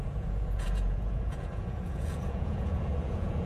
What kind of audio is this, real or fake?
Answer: fake